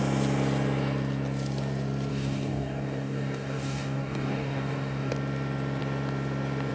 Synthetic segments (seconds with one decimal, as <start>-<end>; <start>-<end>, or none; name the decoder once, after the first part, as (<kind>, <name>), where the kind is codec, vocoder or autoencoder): 2.1-5.1 (codec, DAC)